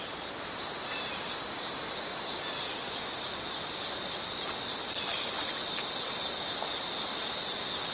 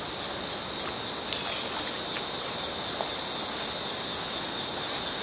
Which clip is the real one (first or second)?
second